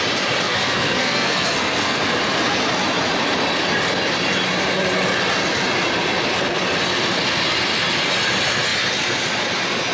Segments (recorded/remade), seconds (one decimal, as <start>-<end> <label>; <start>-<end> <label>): 0.0-0.4 recorded; 0.4-2.0 remade; 2.0-9.9 recorded